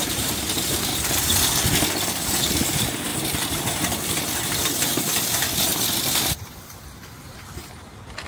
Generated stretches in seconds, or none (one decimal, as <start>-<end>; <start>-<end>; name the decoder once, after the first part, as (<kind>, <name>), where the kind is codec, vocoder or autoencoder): 0.0-0.9 (vocoder, BigVGAN v2); 2.4-5.7; 6.3-8.3